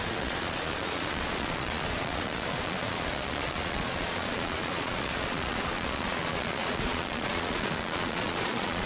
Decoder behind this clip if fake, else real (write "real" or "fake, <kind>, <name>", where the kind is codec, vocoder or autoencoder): fake, vocoder, Vocos